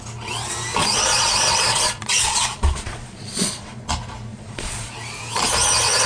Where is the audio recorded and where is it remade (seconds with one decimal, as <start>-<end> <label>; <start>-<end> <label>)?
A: 0.0-0.8 recorded; 0.8-3.8 remade; 3.8-4.3 recorded; 4.3-4.9 remade; 4.9-6.1 recorded